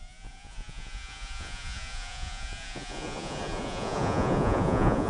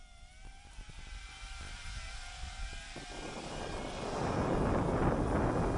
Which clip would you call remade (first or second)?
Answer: first